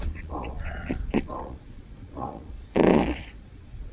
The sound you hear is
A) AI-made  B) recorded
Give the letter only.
A